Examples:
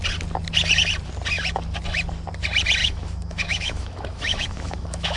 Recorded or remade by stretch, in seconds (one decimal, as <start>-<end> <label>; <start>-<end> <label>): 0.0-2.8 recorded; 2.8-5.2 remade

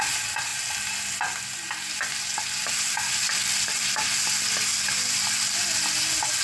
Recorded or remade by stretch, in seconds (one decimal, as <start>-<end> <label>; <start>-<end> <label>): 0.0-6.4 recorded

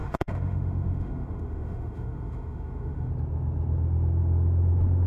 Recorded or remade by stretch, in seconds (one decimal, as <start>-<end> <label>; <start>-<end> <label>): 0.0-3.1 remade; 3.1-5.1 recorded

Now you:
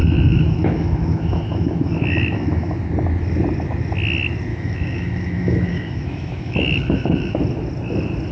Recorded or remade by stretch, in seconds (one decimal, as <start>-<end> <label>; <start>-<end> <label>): 0.0-2.9 remade; 2.9-4.5 recorded; 4.5-7.4 remade; 7.4-8.3 recorded

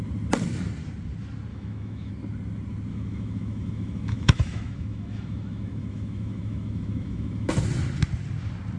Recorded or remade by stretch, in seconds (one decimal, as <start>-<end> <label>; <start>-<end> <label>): 0.0-1.5 recorded; 1.5-2.1 remade; 2.1-2.9 recorded; 2.9-7.5 remade; 7.5-8.8 recorded

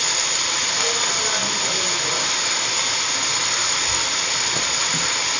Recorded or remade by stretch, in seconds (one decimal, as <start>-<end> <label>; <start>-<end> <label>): 0.0-5.4 recorded

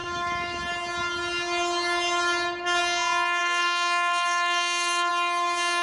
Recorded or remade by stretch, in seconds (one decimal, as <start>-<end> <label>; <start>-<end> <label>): 0.0-0.6 remade; 0.6-3.4 recorded; 3.4-5.1 remade; 5.1-5.8 recorded

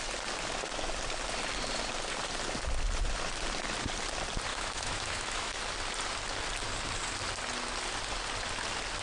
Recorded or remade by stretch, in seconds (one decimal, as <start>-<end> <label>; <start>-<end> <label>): 0.0-4.5 recorded; 4.5-5.6 remade; 5.6-9.0 recorded